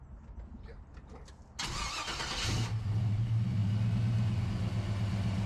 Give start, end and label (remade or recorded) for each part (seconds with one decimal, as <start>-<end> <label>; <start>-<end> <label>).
0.0-5.5 recorded